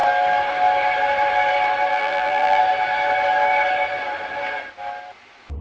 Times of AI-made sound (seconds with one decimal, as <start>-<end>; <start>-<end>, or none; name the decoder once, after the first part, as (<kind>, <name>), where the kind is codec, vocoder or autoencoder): 1.9-2.6 (vocoder, BigVGAN v2)